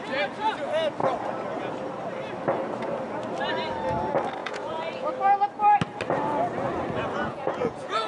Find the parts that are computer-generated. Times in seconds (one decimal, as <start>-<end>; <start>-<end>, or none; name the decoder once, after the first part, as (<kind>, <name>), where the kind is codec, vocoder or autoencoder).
4.4-5.1 (vocoder, Vocos); 7.2-8.1